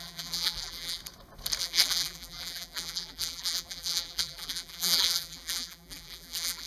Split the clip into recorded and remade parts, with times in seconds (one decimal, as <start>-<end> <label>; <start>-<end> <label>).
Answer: 0.0-1.0 remade; 1.0-1.6 recorded; 1.6-6.7 remade

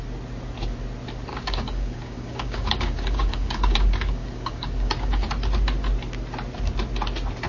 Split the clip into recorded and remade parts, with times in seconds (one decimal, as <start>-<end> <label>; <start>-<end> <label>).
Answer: 0.0-1.3 recorded; 1.3-5.3 remade; 5.3-7.5 recorded

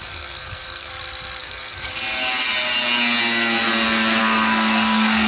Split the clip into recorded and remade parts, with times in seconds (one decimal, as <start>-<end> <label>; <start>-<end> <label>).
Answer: 0.0-0.9 remade; 0.9-1.4 recorded; 1.4-1.9 remade; 1.9-4.2 recorded; 4.2-5.3 remade

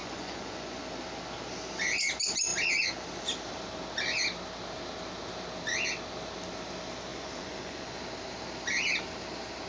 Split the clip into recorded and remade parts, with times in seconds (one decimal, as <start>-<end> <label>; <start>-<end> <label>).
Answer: 0.0-0.8 remade; 0.8-7.1 recorded; 7.1-8.0 remade; 8.0-9.7 recorded

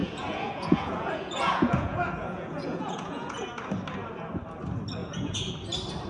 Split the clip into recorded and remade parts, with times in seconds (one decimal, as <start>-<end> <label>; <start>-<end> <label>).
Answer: 0.0-3.5 remade; 3.5-5.0 recorded; 5.0-5.5 remade; 5.5-6.1 recorded

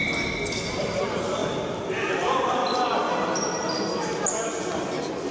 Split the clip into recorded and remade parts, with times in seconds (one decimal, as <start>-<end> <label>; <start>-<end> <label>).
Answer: 0.0-0.8 recorded; 0.8-1.4 remade; 1.4-2.1 recorded; 2.1-2.6 remade; 2.6-5.3 recorded